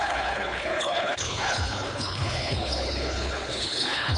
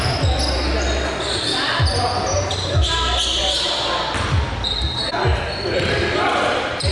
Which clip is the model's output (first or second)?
first